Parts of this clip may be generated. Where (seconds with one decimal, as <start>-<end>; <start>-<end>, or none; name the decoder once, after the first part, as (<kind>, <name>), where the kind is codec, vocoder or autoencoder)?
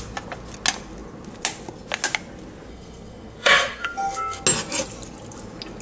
2.7-4.4 (codec, SNAC)